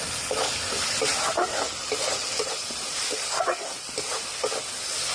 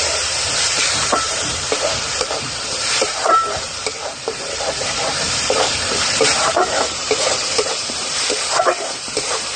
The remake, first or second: second